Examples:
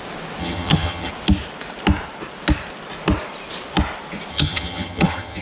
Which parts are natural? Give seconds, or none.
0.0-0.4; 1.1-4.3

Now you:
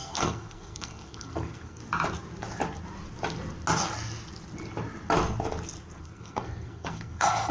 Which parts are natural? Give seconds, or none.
1.8-6.0

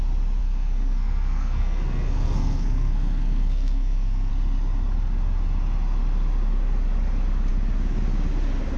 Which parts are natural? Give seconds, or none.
0.0-0.4; 4.3-8.8

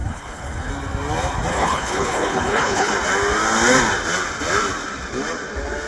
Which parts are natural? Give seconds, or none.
0.7-1.5; 2.9-5.9

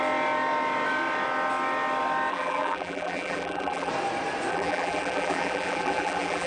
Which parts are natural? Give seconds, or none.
0.0-2.3; 3.9-4.5

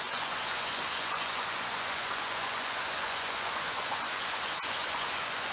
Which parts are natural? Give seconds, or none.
none

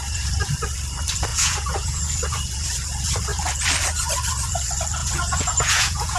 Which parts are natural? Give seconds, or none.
0.0-1.3; 2.0-5.0

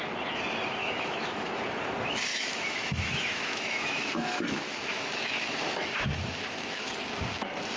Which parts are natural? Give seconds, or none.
0.0-0.8; 1.5-2.3; 6.9-7.8